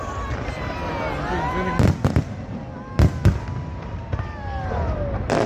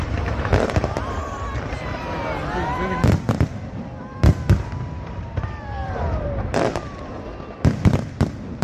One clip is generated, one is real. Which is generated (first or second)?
second